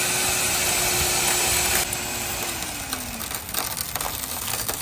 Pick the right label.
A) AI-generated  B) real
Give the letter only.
B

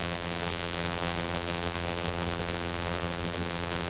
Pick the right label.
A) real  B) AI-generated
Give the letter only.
B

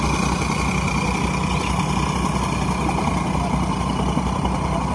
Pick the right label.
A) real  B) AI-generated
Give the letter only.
A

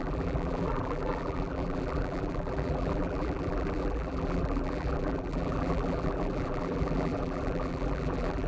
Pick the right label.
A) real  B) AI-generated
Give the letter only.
B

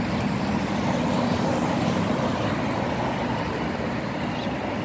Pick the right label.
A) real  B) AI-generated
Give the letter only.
A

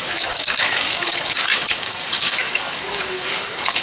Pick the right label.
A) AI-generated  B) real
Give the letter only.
A